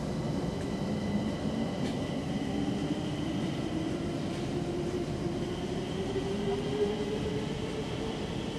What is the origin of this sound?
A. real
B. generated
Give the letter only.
A